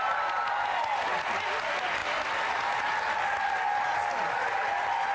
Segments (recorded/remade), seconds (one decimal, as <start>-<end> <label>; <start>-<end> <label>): 0.0-5.1 recorded